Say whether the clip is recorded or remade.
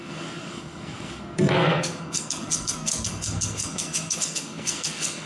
remade